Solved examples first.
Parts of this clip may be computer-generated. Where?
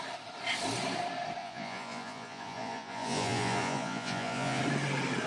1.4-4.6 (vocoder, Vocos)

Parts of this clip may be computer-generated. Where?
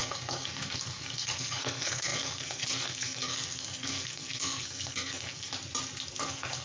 0.0-5.5 (codec, SNAC); 6.1-6.6